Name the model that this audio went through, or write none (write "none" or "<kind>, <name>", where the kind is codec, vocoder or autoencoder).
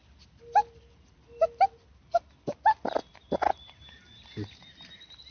none